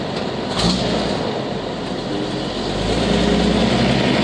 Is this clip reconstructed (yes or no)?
no